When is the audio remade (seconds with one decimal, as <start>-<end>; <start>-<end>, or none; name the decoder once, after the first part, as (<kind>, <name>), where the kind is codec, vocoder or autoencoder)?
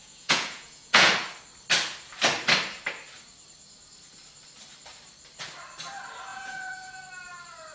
0.0-1.1 (vocoder, Vocos); 6.3-7.0